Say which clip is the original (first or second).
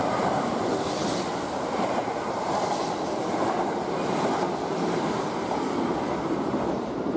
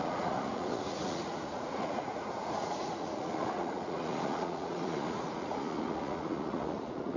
first